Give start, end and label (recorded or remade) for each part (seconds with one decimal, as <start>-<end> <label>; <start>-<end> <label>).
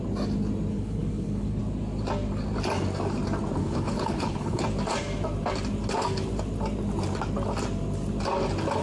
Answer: 0.0-0.7 recorded; 0.7-1.6 remade; 1.6-3.6 recorded; 3.6-4.6 remade; 4.6-8.8 recorded